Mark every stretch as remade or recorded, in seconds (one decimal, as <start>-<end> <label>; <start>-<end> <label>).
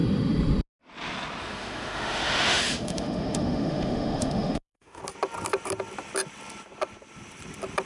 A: 0.0-1.4 recorded; 1.4-5.0 remade; 5.0-7.9 recorded